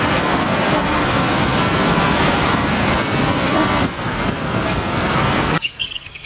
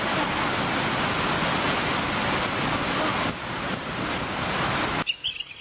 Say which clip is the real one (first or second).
second